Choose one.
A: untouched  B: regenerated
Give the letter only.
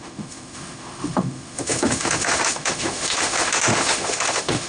B